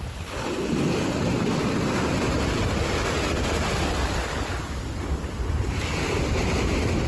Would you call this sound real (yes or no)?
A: yes